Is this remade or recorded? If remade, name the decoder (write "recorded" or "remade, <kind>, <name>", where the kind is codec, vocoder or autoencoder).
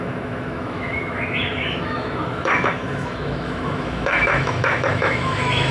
remade, autoencoder, DAC-VAE